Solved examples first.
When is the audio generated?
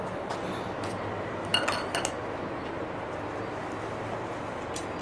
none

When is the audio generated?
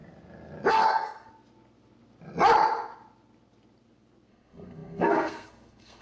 0.7-1.3 (codec, SNAC); 4.3-6.0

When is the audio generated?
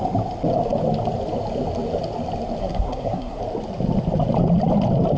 2.6-3.4 (codec, SNAC)